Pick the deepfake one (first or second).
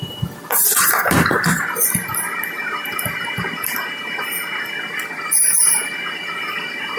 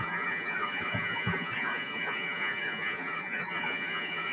second